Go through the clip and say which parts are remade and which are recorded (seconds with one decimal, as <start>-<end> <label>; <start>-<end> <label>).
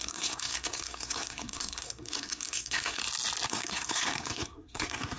0.0-3.0 remade; 3.0-3.5 recorded; 3.5-5.2 remade